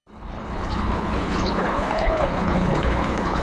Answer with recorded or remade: remade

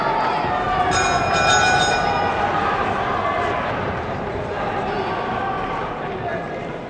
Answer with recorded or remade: recorded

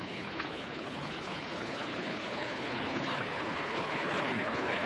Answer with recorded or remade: remade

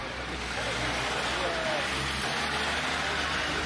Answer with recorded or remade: recorded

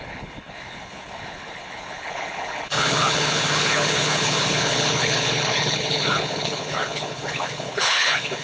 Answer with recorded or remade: remade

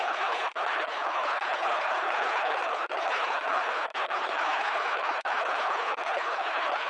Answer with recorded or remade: remade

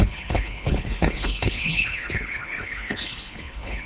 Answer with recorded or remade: remade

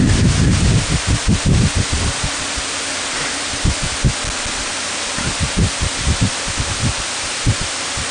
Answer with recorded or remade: recorded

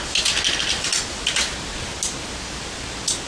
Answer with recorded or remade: recorded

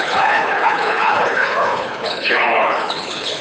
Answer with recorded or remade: remade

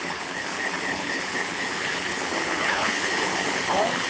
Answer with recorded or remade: remade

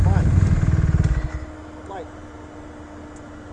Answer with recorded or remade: recorded